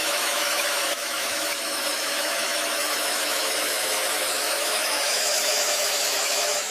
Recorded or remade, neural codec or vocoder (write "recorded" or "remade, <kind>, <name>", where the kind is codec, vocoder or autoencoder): remade, autoencoder, DAC-VAE